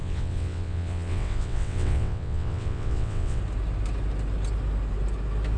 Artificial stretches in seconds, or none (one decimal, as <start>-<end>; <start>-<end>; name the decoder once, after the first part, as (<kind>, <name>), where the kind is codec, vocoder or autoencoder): 0.0-3.4 (vocoder, WaveNeXt)